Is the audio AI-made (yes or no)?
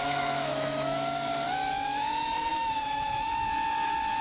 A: yes